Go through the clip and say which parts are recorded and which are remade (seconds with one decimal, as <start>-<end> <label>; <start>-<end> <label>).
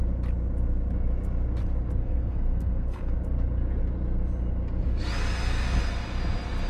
0.0-2.0 recorded; 2.0-3.1 remade; 3.1-6.7 recorded